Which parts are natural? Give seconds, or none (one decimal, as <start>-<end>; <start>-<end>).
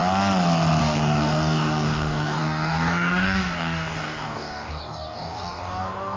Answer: 0.0-0.8